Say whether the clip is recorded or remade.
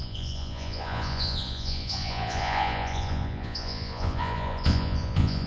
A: remade